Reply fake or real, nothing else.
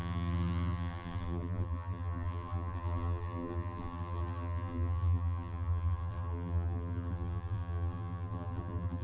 fake